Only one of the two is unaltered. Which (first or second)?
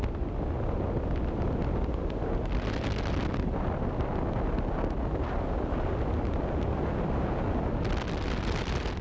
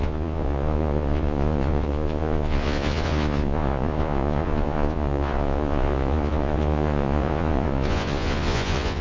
first